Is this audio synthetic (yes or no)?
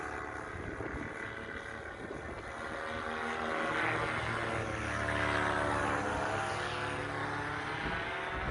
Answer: no